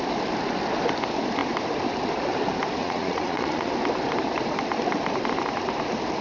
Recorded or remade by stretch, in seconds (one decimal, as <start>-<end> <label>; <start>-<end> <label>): 0.0-2.8 recorded; 2.8-3.7 remade; 3.7-6.2 recorded